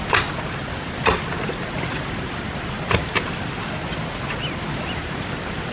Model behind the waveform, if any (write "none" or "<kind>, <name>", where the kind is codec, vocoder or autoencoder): none